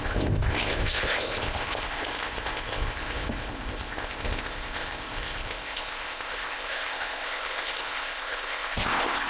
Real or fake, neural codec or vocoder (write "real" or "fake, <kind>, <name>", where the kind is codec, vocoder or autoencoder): fake, codec, ZipCodec